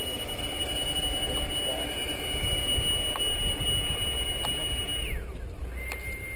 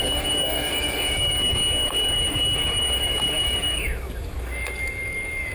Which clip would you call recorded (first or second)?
first